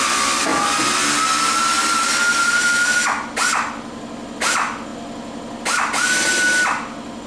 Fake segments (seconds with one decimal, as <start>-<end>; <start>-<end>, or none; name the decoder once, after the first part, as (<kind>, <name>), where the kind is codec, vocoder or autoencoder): none